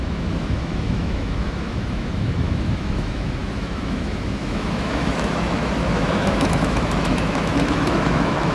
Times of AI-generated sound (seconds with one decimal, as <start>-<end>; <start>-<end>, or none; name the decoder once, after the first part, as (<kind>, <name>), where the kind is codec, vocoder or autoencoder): 0.0-8.5 (autoencoder, DAC-VAE)